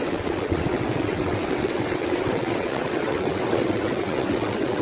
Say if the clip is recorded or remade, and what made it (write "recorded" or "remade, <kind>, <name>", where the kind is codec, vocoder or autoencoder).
remade, vocoder, WaveNeXt